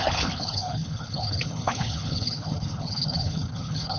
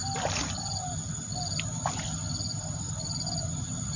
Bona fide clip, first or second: second